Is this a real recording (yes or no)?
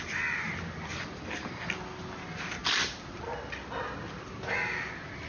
yes